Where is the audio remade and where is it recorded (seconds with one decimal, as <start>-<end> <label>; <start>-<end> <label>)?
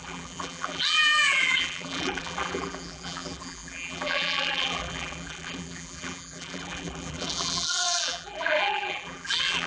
0.0-9.7 remade